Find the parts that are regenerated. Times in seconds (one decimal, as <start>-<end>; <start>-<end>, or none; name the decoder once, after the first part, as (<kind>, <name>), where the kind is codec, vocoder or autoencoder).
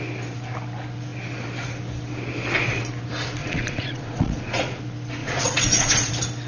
3.4-4.8 (vocoder, Vocos); 5.2-6.1